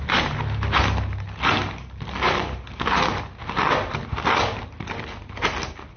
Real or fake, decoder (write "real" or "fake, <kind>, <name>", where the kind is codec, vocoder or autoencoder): real